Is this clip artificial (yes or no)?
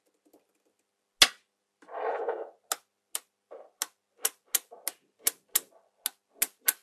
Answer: no